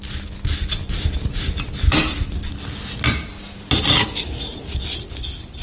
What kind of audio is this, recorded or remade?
recorded